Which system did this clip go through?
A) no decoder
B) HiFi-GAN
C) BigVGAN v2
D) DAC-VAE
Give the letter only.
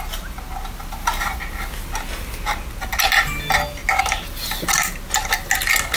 A